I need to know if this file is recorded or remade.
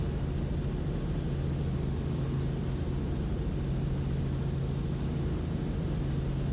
recorded